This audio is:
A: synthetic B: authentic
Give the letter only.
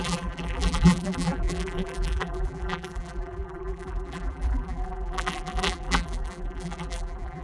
A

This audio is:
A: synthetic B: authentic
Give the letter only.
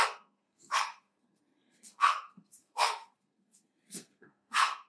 A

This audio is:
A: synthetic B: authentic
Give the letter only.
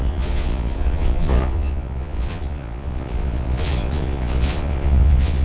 A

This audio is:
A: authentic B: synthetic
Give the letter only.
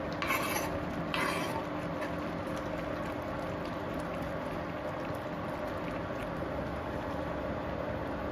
A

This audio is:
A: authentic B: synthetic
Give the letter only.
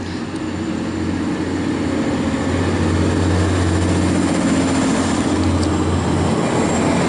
A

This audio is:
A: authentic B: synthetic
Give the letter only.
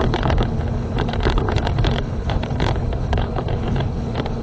B